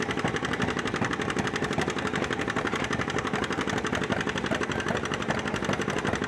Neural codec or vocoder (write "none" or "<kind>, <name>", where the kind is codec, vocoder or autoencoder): none